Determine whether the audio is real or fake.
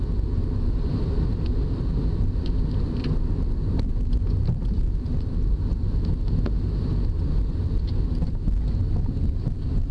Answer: real